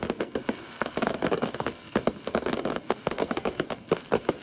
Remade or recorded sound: remade